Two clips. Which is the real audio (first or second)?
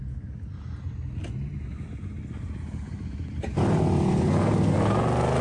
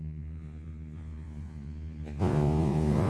first